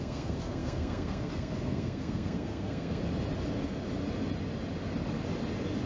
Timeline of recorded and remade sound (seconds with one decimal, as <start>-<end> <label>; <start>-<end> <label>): 0.0-3.0 remade; 3.0-5.9 recorded